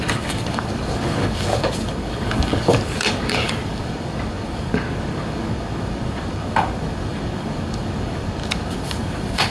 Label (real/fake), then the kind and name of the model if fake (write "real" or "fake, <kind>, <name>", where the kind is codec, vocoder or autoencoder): fake, codec, DAC